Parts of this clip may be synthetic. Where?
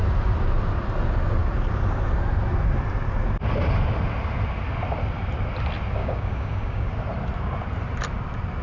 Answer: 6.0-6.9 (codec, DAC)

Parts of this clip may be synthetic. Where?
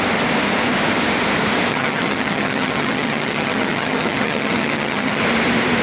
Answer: 1.7-5.2 (vocoder, HiFi-GAN)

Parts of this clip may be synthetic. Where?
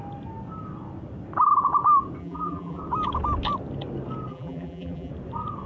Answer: 2.2-2.8 (vocoder, BigVGAN v2); 4.3-5.1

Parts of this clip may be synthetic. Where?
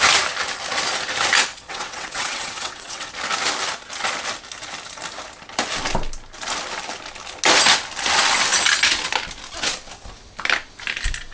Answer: 1.5-3.1 (vocoder, WaveNeXt)